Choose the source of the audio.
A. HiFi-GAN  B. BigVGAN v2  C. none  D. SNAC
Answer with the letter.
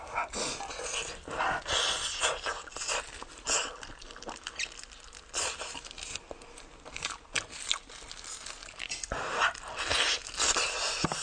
C